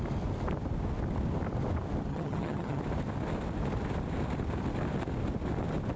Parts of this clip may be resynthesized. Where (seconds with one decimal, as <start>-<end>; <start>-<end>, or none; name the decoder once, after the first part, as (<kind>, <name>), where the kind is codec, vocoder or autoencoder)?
2.1-2.8 (vocoder, HiFi-GAN)